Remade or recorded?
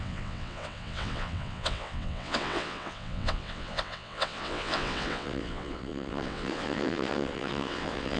remade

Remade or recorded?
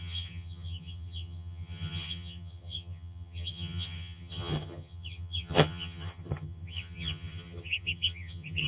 remade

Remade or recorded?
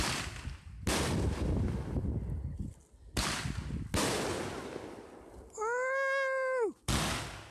recorded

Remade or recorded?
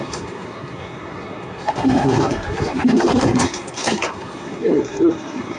remade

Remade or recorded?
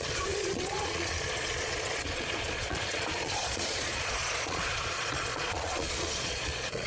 remade